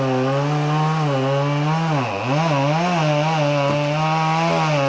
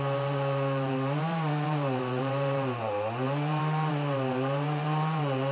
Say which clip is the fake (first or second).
second